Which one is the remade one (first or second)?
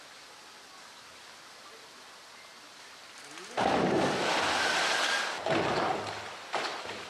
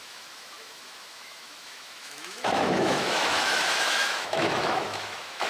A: second